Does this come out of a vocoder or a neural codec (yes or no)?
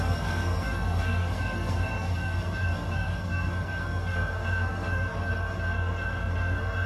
yes